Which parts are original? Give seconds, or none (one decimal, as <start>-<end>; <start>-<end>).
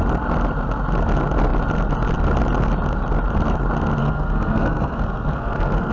0.0-4.0